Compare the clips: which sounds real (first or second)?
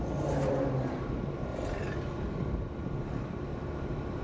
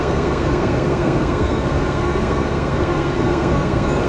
first